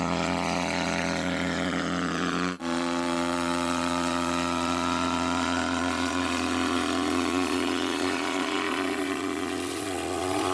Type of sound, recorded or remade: remade